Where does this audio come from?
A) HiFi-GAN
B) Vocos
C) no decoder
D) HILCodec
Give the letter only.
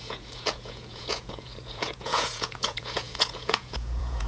B